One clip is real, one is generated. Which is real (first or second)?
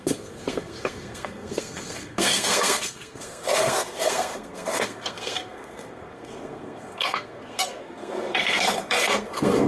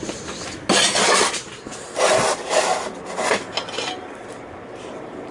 second